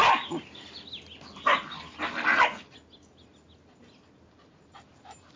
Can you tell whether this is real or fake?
real